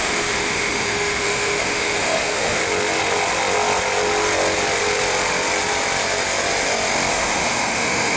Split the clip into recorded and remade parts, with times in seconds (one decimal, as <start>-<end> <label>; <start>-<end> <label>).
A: 0.0-2.6 remade; 2.6-7.1 recorded; 7.1-8.2 remade